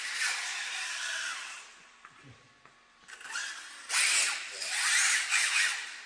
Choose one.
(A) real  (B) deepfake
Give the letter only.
A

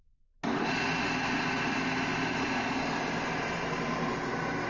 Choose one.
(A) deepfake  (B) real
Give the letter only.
B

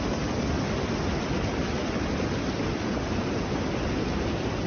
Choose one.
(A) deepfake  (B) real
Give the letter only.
B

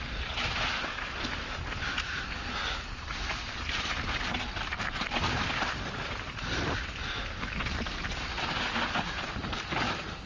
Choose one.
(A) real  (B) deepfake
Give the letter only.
A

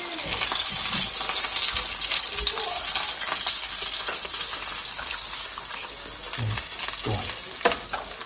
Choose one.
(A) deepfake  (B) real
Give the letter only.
B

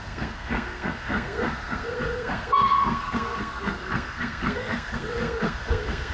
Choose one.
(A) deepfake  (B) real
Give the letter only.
A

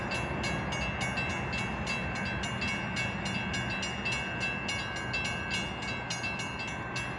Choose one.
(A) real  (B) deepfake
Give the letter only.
A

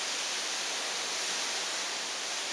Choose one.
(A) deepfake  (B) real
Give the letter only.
B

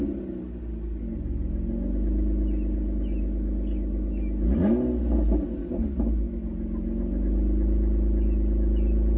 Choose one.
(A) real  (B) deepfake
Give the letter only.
A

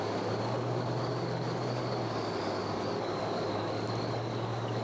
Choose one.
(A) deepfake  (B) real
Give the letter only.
A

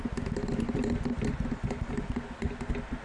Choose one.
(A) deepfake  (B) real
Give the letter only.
B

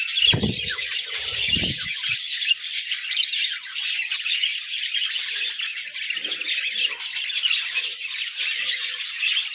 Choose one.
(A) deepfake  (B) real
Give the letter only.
A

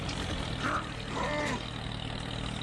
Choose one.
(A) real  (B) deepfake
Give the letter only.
A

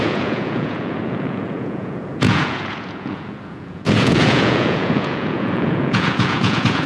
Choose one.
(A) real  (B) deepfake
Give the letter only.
B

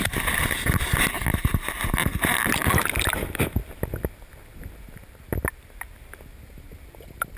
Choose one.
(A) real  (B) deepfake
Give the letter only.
A